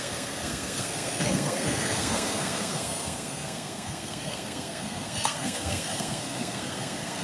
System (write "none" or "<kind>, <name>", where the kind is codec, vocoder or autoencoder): codec, SNAC